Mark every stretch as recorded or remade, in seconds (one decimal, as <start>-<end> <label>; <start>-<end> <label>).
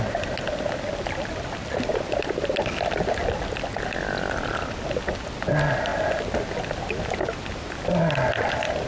0.0-8.9 recorded